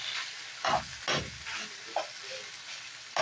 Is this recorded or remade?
recorded